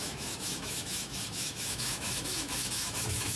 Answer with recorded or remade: remade